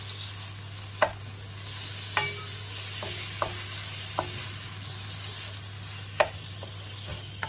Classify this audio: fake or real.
real